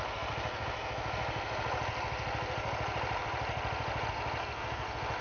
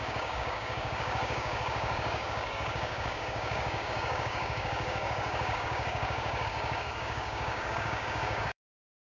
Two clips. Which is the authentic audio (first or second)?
first